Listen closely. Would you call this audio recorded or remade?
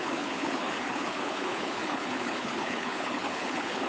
remade